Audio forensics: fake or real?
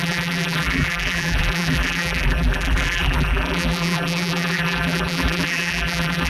fake